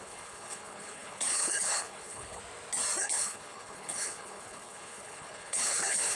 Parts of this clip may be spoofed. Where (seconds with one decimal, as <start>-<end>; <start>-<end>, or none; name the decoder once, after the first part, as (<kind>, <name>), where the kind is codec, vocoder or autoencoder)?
0.0-2.4 (codec, HILCodec); 3.0-6.2